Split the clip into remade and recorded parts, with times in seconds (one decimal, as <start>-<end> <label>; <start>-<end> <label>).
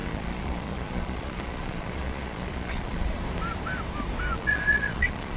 0.0-3.2 remade; 3.2-4.3 recorded; 4.3-5.4 remade